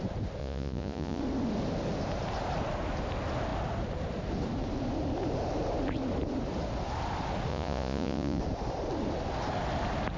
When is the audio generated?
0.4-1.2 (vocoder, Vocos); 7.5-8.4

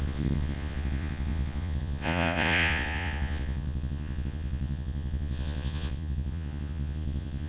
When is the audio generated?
0.0-7.5 (vocoder, Vocos)

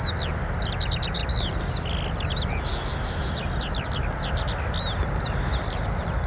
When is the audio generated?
none